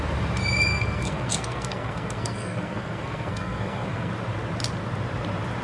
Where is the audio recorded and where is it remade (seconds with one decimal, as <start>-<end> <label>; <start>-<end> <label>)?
0.0-0.7 recorded; 0.7-4.1 remade; 4.1-5.6 recorded